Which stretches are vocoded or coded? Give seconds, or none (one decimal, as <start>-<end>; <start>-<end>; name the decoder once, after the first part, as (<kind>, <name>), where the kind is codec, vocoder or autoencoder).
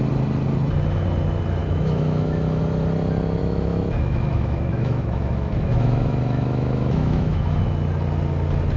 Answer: 1.6-2.6 (autoencoder, DAC-VAE); 3.4-7.6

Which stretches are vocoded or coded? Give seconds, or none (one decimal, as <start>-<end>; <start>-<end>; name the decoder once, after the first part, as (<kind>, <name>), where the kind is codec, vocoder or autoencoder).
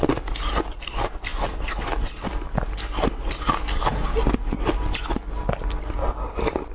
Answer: none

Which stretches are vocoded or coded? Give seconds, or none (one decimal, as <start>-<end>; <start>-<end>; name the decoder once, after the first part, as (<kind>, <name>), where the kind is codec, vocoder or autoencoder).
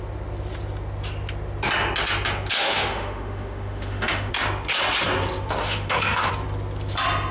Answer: 2.6-4.3 (autoencoder, DAC-VAE); 5.6-6.3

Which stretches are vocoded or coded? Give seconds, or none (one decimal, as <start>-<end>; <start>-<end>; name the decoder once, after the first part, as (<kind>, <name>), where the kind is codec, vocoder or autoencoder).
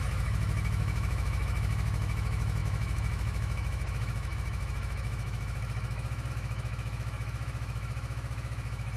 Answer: 0.0-9.0 (autoencoder, DAC-VAE)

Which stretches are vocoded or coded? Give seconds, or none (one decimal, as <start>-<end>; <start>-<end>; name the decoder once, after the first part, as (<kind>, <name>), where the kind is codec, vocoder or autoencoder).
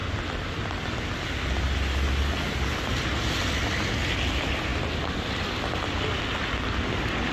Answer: none